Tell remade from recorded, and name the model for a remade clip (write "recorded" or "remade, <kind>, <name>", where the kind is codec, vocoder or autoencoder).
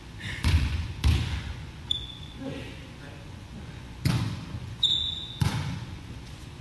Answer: remade, vocoder, Vocos